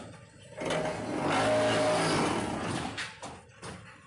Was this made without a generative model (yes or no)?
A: yes